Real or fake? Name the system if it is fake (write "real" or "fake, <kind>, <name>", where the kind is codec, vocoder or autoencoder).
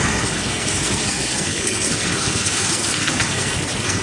fake, codec, SNAC